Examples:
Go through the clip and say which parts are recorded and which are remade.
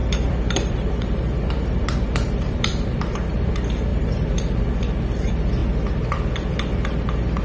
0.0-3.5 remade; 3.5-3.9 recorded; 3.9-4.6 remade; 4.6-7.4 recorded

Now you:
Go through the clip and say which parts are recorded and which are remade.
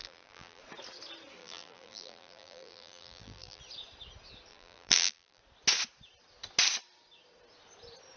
0.0-0.6 remade; 0.6-1.4 recorded; 1.4-3.6 remade; 3.6-4.5 recorded; 4.5-5.4 remade; 5.4-8.2 recorded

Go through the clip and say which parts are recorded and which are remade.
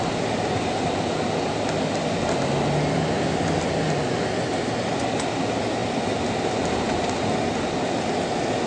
0.0-5.8 recorded; 5.8-6.5 remade; 6.5-8.7 recorded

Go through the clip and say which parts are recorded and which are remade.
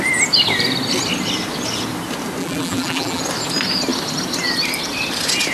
0.0-2.4 recorded; 2.4-3.2 remade; 3.2-5.5 recorded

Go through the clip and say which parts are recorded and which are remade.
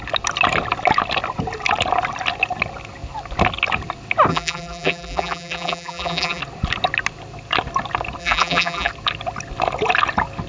0.0-4.3 recorded; 4.3-6.4 remade; 6.4-8.2 recorded; 8.2-8.9 remade; 8.9-10.5 recorded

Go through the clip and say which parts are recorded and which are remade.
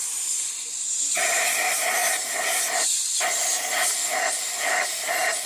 0.0-0.5 remade; 0.5-5.5 recorded